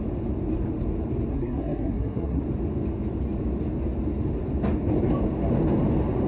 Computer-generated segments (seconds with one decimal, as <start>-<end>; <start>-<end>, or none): 1.3-2.4